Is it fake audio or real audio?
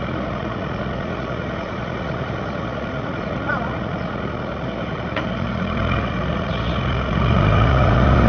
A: fake